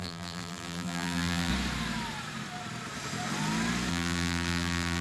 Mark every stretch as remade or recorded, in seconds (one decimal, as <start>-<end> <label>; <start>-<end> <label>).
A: 0.0-1.5 remade; 1.5-3.9 recorded; 3.9-5.0 remade